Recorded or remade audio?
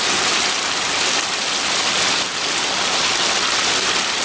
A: recorded